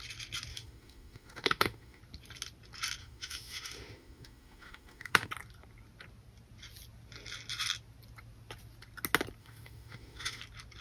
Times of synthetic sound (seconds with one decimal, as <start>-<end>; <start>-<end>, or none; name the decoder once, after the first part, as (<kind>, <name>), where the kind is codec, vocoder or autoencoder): 0.5-2.0 (autoencoder, DAC-VAE); 3.0-5.3; 9.4-10.4